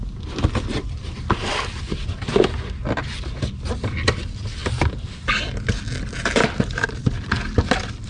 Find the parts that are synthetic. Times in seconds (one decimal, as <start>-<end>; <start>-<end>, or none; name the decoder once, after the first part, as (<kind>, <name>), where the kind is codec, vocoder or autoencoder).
none